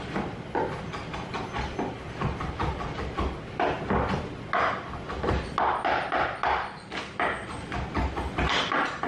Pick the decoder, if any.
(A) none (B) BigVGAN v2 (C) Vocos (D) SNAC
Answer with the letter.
A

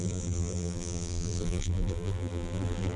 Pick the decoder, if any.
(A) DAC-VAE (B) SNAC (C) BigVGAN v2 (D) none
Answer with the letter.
C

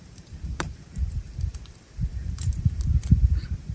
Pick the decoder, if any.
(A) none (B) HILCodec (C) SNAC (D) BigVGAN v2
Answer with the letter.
D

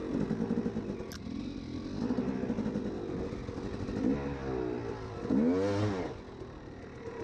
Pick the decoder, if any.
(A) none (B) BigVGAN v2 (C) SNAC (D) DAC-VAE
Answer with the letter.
A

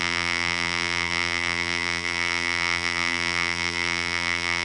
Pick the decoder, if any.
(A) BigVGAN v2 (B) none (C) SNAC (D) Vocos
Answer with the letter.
A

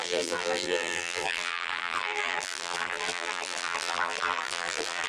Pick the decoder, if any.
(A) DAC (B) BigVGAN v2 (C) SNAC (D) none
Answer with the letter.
B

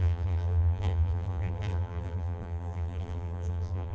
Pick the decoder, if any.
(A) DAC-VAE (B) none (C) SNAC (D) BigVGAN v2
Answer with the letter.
D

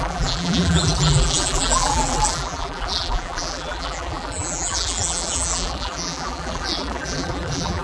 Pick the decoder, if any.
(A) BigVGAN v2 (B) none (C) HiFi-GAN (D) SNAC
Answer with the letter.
A